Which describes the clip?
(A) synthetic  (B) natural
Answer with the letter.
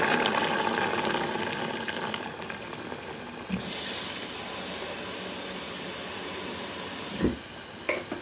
B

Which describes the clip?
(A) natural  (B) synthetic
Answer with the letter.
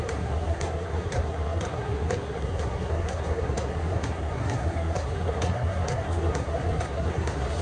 B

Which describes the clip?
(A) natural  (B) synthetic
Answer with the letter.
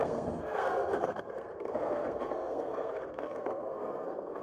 B